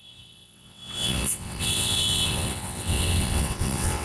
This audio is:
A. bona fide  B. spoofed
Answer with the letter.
B